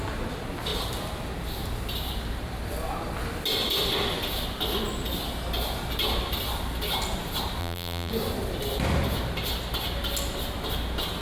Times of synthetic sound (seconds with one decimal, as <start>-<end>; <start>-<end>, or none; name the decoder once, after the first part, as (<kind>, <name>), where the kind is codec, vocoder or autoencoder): 7.6-8.1 (vocoder, BigVGAN v2)